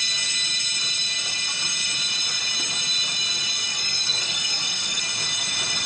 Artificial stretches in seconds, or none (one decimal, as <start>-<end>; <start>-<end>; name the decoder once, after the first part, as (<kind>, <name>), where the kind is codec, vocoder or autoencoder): 3.7-5.0 (codec, SNAC)